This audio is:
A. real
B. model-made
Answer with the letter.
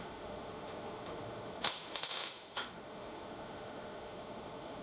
B